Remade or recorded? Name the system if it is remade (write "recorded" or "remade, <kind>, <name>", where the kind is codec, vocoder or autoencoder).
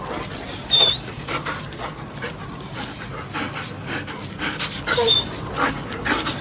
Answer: recorded